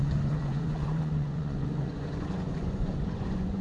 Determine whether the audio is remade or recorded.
remade